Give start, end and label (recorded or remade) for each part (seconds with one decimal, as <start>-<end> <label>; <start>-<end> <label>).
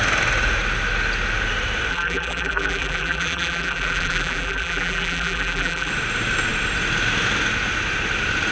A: 0.0-1.9 recorded; 1.9-5.9 remade; 5.9-8.5 recorded